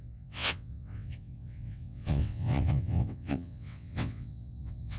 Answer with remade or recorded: remade